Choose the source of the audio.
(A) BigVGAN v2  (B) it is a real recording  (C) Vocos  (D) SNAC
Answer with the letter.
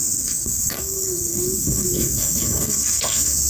D